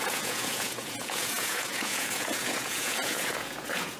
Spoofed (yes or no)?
yes